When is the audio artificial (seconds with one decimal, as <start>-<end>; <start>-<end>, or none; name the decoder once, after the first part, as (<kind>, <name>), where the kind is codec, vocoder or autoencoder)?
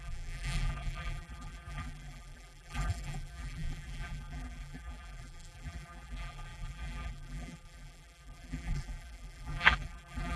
0.0-10.4 (vocoder, BigVGAN v2)